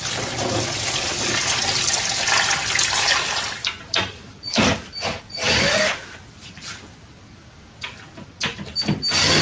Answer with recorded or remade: recorded